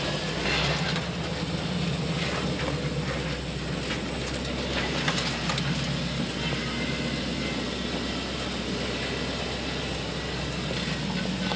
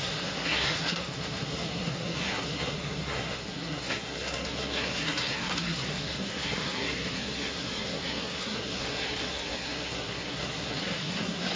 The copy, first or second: second